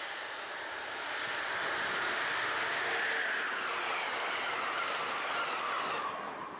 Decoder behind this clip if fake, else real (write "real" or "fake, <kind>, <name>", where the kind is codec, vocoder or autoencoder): real